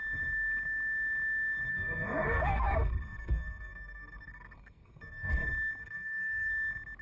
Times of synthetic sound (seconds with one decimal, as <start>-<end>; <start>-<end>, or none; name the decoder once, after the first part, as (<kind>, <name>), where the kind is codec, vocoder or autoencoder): 1.7-5.3 (codec, SNAC); 5.8-6.5